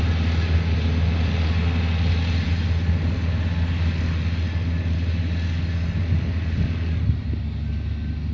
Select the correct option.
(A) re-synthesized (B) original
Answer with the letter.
B